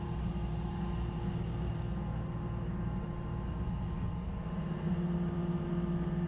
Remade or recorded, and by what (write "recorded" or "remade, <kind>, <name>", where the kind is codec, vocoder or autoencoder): recorded